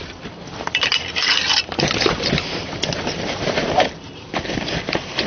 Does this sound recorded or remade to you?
remade